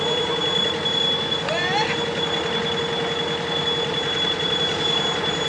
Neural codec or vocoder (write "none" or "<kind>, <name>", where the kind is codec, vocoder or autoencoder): none